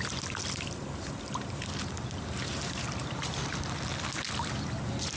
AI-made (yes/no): no